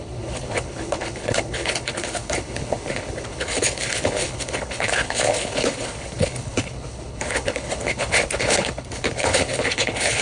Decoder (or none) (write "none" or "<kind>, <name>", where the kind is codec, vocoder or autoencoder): codec, HILCodec